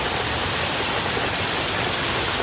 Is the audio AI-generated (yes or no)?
no